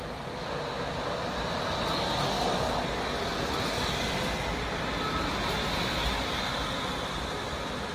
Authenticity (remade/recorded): recorded